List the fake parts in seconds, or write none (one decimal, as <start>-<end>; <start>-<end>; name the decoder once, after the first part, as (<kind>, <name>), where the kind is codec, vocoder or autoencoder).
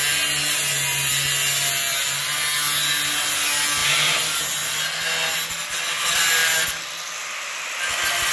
none